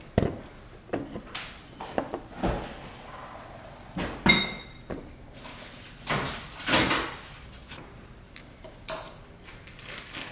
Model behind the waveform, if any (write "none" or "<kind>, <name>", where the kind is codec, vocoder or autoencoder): none